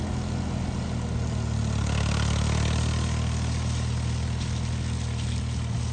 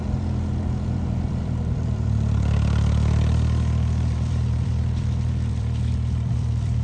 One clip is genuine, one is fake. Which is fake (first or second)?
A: second